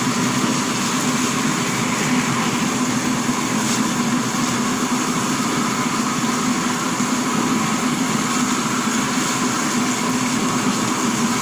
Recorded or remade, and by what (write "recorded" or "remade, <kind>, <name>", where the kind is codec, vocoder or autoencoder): recorded